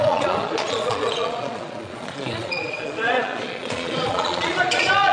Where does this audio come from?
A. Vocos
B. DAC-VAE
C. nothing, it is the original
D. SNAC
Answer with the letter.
A